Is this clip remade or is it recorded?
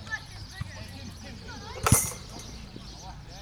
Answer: recorded